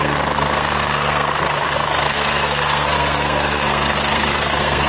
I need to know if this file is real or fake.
fake